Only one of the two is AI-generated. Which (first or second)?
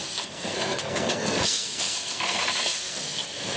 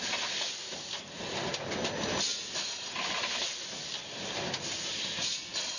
first